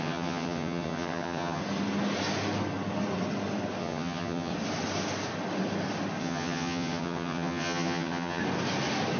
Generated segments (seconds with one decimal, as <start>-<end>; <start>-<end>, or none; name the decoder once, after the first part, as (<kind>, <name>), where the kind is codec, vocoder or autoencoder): 0.0-1.6 (vocoder, HiFi-GAN); 3.8-4.5; 6.2-8.4